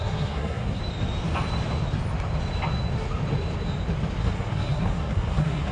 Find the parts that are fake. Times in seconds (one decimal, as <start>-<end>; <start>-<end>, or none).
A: 0.0-0.8; 4.2-5.7